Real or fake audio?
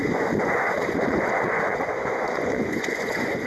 fake